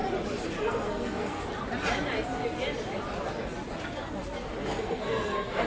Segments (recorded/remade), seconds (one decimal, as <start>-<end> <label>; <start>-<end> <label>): 0.0-0.6 recorded; 0.6-1.4 remade; 1.4-4.8 recorded; 4.8-5.7 remade